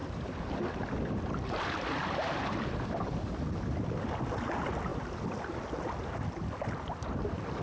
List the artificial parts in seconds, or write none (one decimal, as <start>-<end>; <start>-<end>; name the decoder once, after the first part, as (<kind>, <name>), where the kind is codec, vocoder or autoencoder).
0.0-3.3 (vocoder, BigVGAN v2); 4.9-5.7